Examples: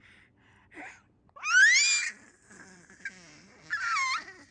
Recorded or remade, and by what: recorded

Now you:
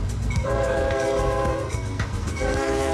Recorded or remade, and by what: remade, codec, SNAC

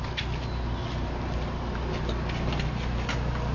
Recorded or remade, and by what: recorded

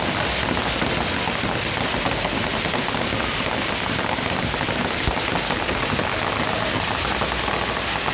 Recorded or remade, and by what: recorded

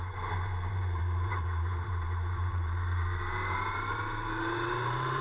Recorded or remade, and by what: remade, vocoder, BigVGAN v2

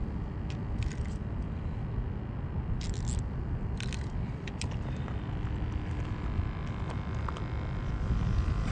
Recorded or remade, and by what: recorded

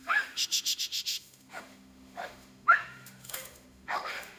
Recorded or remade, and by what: remade, autoencoder, DAC-VAE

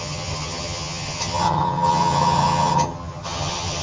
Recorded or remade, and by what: remade, vocoder, HiFi-GAN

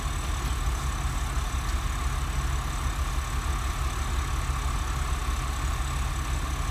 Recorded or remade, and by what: recorded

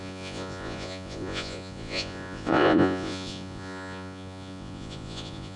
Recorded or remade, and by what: remade, vocoder, Vocos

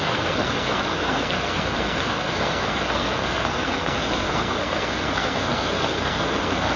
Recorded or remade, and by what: remade, codec, SNAC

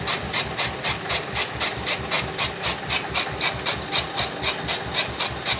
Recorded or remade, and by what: recorded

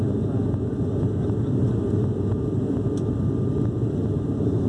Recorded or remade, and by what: recorded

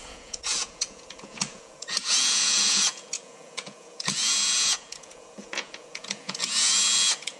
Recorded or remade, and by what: remade, vocoder, Vocos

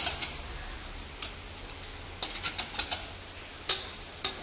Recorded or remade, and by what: recorded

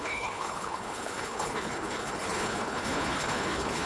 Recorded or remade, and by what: remade, codec, HILCodec